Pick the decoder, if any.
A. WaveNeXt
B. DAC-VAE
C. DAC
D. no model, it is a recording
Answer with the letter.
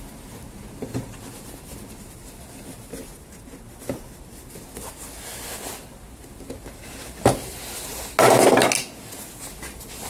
D